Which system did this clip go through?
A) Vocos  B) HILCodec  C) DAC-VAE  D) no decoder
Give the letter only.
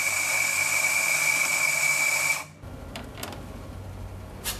D